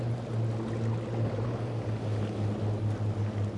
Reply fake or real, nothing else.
real